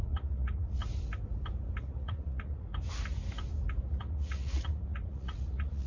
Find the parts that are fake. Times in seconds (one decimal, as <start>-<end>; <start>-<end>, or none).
0.0-0.8; 1.8-2.7; 3.9-5.9